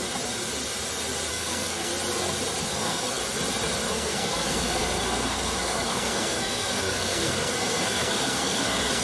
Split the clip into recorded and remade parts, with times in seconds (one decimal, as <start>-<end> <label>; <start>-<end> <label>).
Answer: 0.0-1.3 recorded; 1.3-1.9 remade; 1.9-2.6 recorded; 2.6-3.2 remade; 3.2-3.9 recorded; 3.9-9.0 remade